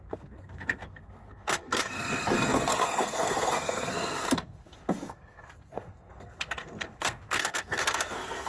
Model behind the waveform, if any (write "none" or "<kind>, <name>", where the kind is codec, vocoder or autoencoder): codec, SNAC